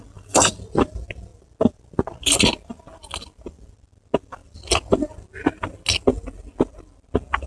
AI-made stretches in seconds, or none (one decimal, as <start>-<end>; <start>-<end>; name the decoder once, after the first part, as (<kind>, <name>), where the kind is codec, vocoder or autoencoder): none